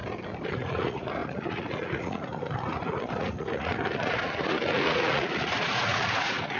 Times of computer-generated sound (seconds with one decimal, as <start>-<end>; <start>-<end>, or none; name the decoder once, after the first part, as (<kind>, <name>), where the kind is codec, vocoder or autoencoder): 0.5-6.6 (vocoder, Vocos)